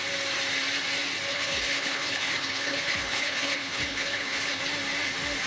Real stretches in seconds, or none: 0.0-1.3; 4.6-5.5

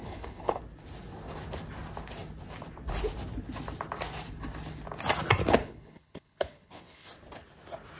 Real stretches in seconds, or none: 0.6-5.6; 7.1-8.0

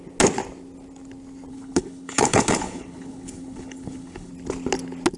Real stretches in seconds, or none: 0.0-1.5; 4.3-5.2

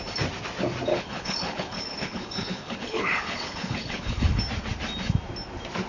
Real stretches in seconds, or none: 0.0-0.9; 4.4-5.9

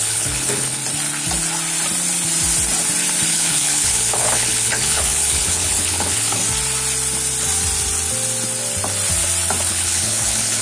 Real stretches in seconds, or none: 0.8-3.3; 6.4-9.7